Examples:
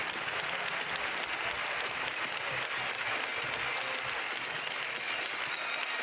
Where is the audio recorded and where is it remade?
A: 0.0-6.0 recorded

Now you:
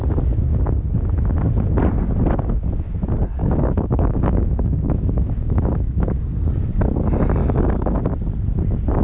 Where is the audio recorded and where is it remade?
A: 0.0-3.4 recorded; 3.4-6.5 remade; 6.5-7.4 recorded; 7.4-8.0 remade; 8.0-9.0 recorded

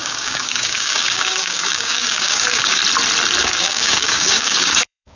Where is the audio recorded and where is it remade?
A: 0.0-2.8 remade; 2.8-3.4 recorded; 3.4-5.2 remade

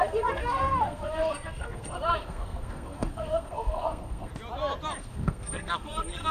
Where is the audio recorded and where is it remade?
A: 0.0-4.3 remade; 4.3-5.0 recorded; 5.0-6.3 remade

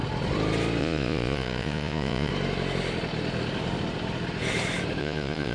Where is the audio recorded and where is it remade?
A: 0.0-0.8 recorded; 0.8-2.3 remade; 2.3-5.0 recorded; 5.0-5.5 remade